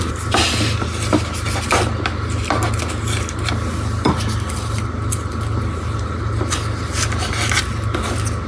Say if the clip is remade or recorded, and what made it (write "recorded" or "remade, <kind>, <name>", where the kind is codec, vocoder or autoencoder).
recorded